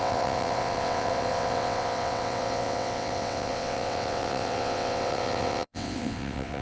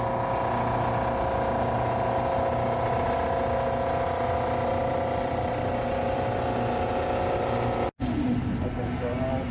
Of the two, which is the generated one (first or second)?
first